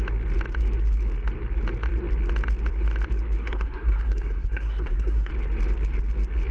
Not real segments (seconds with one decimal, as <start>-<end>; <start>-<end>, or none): 3.4-5.3